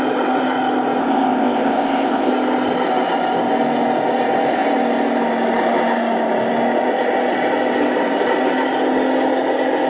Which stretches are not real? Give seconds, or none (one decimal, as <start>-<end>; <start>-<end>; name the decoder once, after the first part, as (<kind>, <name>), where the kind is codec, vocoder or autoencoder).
1.0-2.3 (codec, ZipCodec)